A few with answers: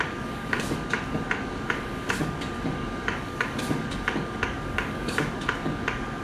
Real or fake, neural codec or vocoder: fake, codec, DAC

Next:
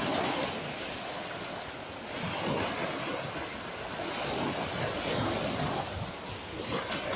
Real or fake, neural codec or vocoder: real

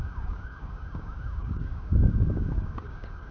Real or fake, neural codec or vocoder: fake, codec, DAC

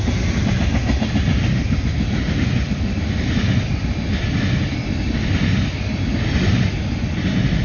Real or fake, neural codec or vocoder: real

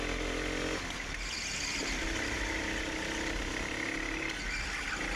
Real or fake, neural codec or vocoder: real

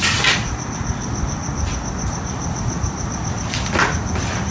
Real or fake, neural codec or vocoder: real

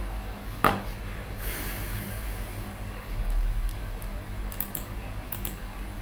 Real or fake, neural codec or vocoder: fake, codec, DAC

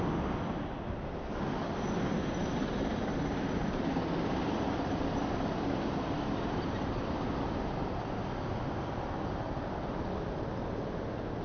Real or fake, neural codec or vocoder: real